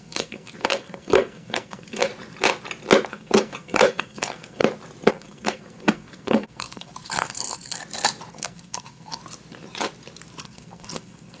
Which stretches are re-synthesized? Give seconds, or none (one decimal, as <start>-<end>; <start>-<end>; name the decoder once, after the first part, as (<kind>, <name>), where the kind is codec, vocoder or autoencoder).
0.0-2.1 (codec, SNAC); 3.1-4.6; 5.1-7.8; 8.3-9.2; 10.4-11.4